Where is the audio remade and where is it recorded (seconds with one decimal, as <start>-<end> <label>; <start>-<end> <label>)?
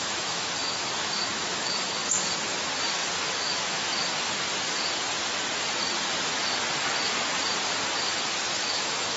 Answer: 0.0-2.0 remade; 2.0-3.2 recorded; 3.2-3.9 remade; 3.9-8.5 recorded; 8.5-9.2 remade